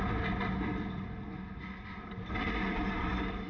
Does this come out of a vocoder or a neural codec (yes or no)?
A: no